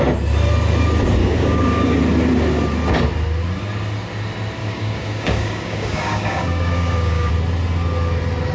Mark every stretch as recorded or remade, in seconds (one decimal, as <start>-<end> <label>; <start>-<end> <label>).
0.0-1.2 recorded; 1.2-2.0 remade; 2.0-4.6 recorded; 4.6-7.3 remade; 7.3-8.5 recorded